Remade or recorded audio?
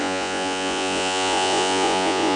remade